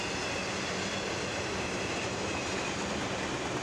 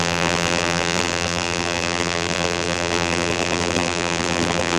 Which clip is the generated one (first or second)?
second